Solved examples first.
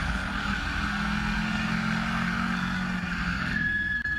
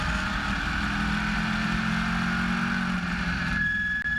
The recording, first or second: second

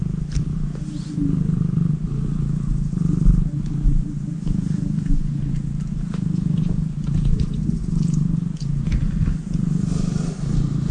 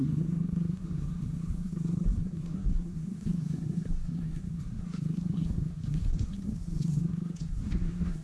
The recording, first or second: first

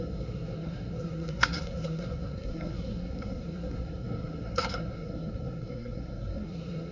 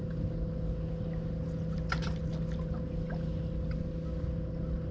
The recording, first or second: second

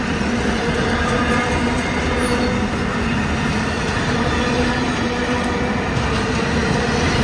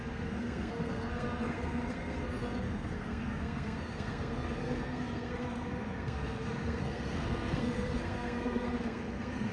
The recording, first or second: first